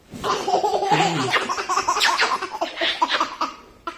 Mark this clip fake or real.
fake